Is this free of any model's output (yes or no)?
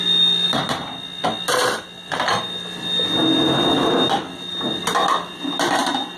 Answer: yes